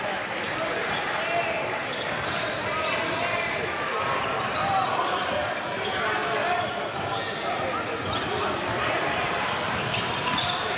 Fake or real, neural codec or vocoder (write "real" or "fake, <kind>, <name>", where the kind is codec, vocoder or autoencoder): real